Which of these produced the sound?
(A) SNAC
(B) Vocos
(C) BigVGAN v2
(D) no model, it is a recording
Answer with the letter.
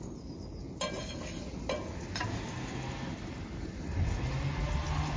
D